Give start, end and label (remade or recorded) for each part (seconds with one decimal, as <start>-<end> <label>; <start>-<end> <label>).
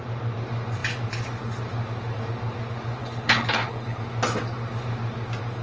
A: 0.0-3.0 recorded; 3.0-4.0 remade; 4.0-5.6 recorded